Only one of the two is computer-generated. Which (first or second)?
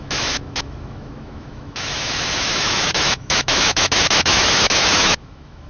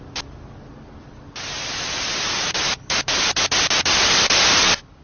first